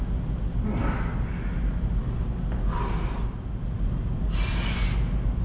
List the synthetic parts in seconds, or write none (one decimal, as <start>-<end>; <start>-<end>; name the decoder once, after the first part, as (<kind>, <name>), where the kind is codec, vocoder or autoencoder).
none